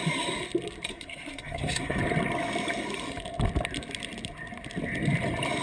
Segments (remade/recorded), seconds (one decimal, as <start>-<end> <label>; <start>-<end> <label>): 0.0-0.9 recorded; 0.9-2.0 remade; 2.0-5.6 recorded